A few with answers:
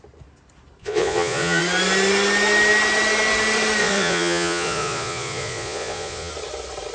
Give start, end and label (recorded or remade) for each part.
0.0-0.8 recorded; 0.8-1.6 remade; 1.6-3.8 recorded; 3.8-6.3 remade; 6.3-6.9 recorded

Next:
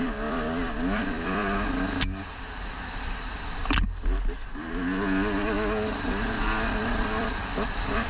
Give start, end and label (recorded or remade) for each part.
0.0-1.4 remade; 1.4-2.3 recorded; 2.3-3.6 remade; 3.6-7.0 recorded; 7.0-8.1 remade

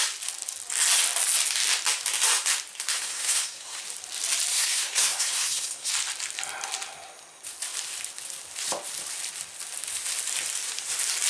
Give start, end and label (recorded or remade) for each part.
0.0-2.9 recorded; 2.9-3.8 remade; 3.8-4.5 recorded; 4.5-5.9 remade; 5.9-11.3 recorded